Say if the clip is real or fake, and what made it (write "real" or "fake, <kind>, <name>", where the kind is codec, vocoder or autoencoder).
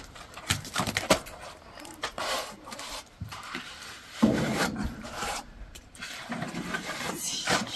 fake, vocoder, BigVGAN v2